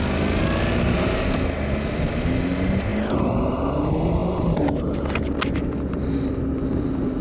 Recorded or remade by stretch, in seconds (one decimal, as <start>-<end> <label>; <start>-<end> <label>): 0.0-7.2 recorded